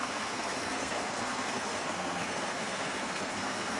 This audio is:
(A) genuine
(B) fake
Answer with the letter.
B